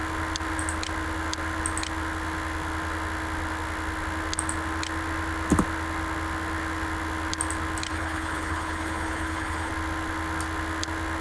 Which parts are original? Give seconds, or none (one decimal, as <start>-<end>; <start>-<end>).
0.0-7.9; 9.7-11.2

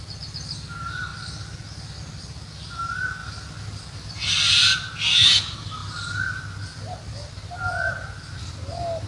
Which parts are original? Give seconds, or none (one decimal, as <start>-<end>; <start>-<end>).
0.0-9.1

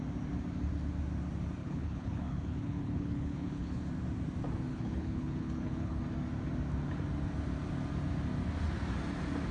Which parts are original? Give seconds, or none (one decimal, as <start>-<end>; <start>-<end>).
0.0-1.6; 3.8-4.7; 6.0-9.5